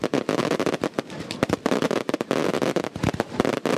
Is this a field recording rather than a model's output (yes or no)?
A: yes